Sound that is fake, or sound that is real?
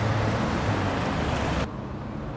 real